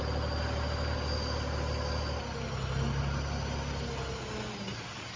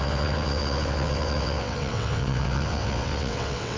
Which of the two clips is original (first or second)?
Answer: first